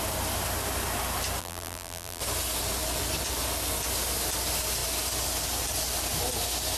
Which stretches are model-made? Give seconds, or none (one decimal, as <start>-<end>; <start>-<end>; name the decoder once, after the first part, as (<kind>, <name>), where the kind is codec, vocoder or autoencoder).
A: 1.4-2.2 (vocoder, BigVGAN v2)